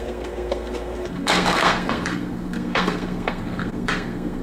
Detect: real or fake fake